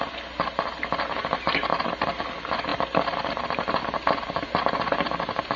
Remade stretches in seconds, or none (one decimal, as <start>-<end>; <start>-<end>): none